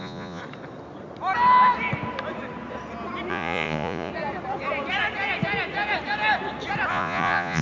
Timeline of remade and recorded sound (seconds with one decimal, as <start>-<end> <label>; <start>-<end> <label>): 0.0-0.4 remade; 0.4-3.3 recorded; 3.3-4.1 remade; 4.1-6.9 recorded; 6.9-7.6 remade